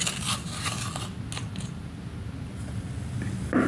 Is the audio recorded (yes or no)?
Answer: yes